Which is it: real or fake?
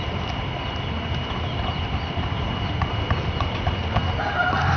real